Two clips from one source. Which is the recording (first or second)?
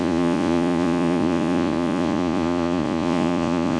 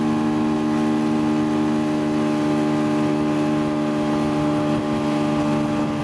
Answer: second